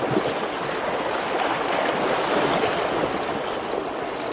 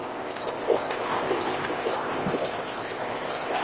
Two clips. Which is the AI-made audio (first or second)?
second